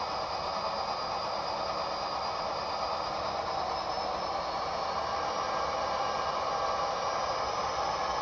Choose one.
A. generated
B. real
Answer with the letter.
B